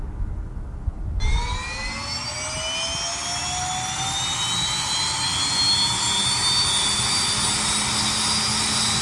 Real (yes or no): yes